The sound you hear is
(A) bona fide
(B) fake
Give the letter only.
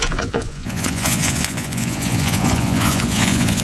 B